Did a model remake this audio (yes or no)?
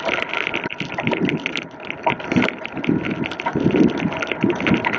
no